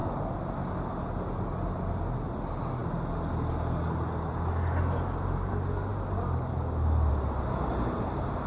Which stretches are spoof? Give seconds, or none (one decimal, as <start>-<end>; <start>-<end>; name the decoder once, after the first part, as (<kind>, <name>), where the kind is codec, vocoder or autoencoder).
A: none